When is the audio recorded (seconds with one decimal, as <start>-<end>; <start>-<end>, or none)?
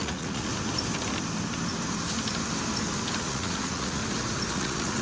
0.5-3.2; 4.0-4.5